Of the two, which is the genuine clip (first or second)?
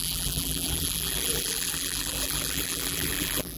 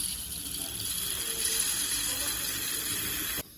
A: second